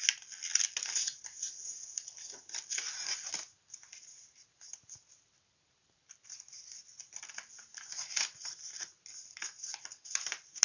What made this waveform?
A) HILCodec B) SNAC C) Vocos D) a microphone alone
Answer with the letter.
D